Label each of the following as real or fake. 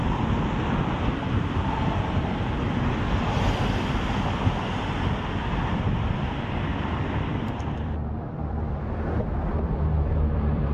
fake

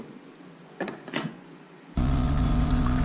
fake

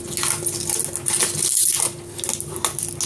real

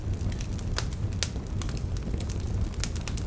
real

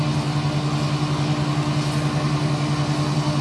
real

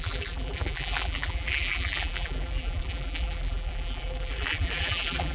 fake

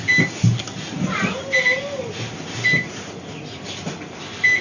real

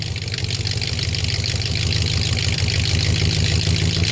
real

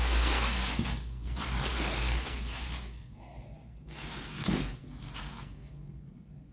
fake